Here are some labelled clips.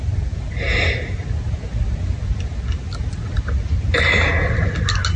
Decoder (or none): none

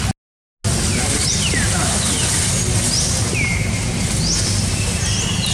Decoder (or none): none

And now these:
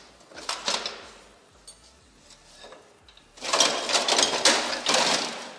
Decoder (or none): none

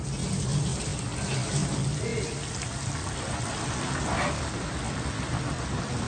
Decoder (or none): none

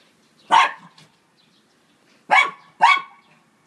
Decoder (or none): none